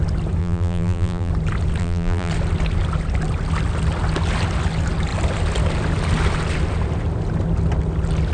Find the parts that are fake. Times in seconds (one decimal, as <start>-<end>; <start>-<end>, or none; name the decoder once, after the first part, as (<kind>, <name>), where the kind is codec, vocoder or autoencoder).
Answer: 0.4-1.3 (vocoder, BigVGAN v2); 1.8-2.3